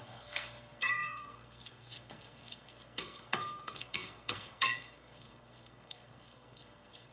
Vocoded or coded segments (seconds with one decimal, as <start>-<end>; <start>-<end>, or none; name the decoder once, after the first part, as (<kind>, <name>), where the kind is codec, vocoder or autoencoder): 0.0-7.1 (codec, SNAC)